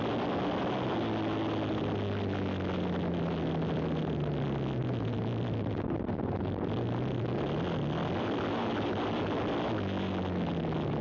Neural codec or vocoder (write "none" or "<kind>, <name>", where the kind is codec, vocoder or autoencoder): none